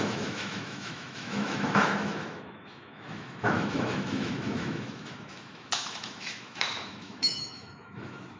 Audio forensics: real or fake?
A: fake